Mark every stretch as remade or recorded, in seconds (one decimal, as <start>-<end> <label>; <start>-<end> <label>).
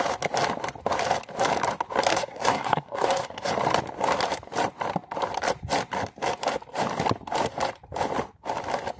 0.0-2.1 recorded; 2.1-3.5 remade; 3.5-9.0 recorded